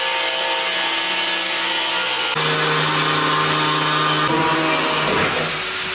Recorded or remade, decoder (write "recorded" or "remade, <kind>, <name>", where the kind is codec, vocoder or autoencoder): recorded